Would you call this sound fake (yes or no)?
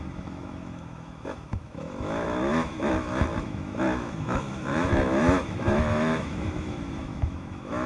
yes